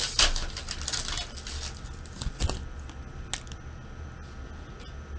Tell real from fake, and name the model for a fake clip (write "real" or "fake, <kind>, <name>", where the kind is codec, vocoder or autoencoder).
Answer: real